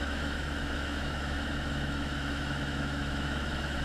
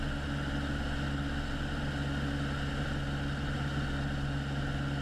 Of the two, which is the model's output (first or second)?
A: first